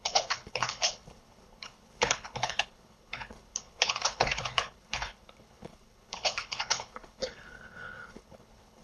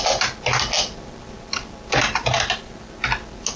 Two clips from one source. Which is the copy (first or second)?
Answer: first